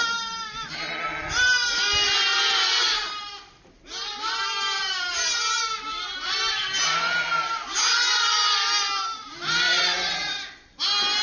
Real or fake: real